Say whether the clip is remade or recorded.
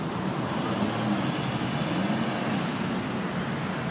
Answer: recorded